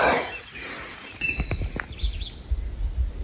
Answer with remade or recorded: recorded